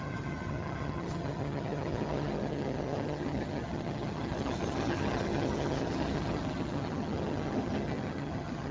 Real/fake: fake